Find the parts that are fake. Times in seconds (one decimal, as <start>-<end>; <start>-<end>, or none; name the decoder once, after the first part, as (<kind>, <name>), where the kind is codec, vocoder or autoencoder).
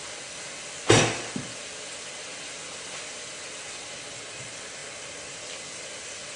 none